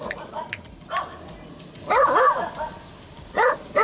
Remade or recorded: recorded